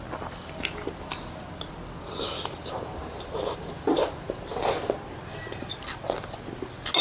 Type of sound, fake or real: real